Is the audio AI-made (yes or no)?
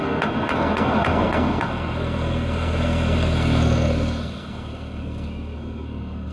yes